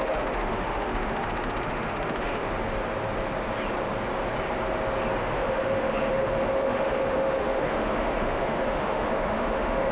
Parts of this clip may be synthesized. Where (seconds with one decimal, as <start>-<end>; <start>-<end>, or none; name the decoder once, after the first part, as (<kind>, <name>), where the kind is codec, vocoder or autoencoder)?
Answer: 0.0-2.4 (autoencoder, DAC-VAE); 5.2-9.9